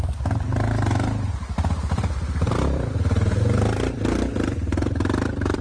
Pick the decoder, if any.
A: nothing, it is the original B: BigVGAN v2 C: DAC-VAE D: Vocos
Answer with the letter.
B